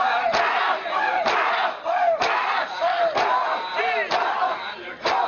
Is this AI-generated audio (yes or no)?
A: no